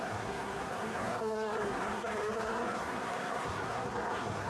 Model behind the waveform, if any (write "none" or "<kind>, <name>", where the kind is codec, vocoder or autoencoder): codec, SNAC